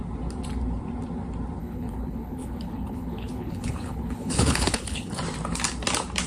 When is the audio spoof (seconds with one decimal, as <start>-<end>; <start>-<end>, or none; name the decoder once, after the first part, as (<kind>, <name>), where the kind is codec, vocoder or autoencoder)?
1.6-5.1 (codec, HILCodec)